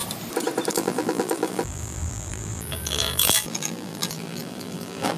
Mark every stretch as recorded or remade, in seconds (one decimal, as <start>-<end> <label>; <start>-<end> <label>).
0.0-0.7 recorded; 0.7-5.2 remade